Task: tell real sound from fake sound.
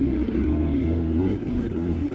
fake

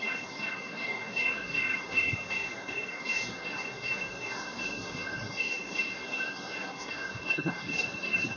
fake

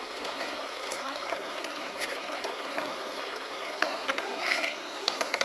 fake